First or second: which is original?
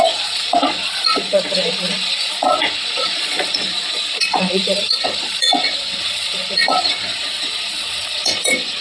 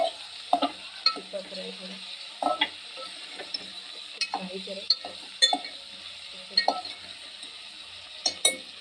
second